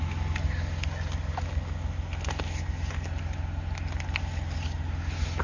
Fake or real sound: real